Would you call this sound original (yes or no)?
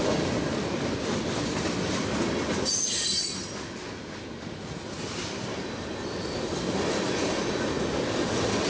yes